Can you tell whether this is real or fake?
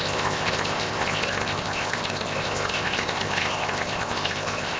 fake